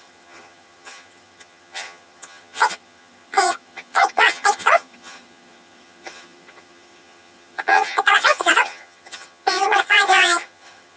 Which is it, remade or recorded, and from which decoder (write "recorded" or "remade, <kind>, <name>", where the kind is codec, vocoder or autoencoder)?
remade, vocoder, HiFi-GAN